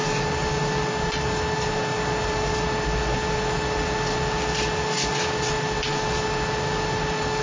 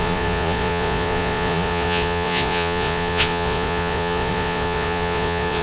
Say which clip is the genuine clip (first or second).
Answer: first